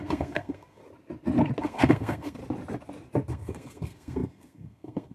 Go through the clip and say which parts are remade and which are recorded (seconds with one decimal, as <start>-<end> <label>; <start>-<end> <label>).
0.0-0.8 remade; 0.8-1.6 recorded; 1.6-2.4 remade; 2.4-3.3 recorded; 3.3-5.1 remade